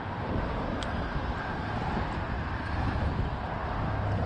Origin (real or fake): real